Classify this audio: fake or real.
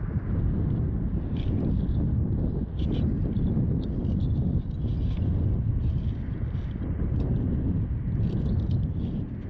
real